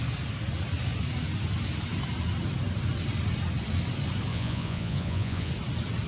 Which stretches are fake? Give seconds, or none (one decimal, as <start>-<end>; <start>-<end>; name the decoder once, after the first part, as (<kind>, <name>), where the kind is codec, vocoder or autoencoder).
4.3-5.5 (vocoder, Vocos)